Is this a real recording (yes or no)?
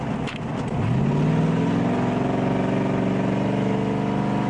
yes